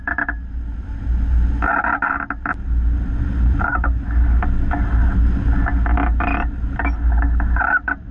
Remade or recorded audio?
recorded